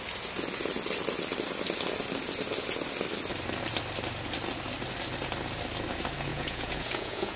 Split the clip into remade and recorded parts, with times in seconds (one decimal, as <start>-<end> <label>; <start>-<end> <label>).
0.0-6.3 recorded; 6.3-7.4 remade